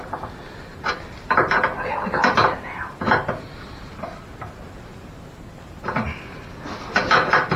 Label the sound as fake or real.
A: real